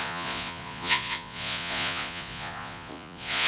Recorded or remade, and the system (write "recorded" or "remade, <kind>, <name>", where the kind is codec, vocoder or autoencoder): remade, vocoder, Vocos